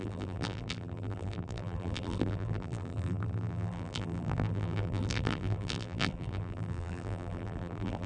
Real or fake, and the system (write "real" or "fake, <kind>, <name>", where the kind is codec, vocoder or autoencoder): fake, vocoder, BigVGAN v2